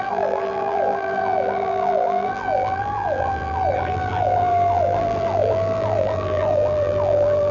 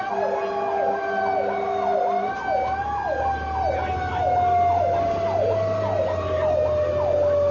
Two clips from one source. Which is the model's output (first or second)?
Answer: first